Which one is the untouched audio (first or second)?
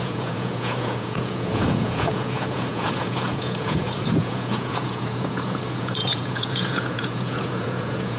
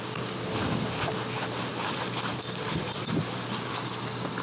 second